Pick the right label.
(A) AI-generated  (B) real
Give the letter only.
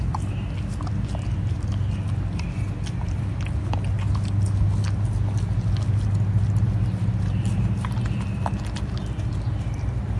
B